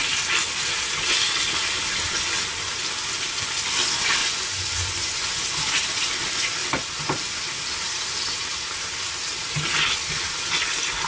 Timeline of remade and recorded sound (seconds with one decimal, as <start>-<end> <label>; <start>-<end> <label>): 0.0-4.2 recorded; 4.2-5.4 remade; 5.4-11.1 recorded